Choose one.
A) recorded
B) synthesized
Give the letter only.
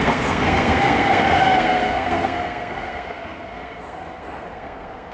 B